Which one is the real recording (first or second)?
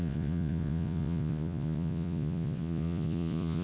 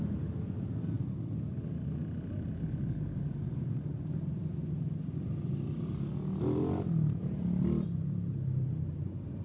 second